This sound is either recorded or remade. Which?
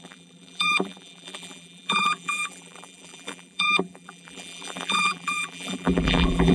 remade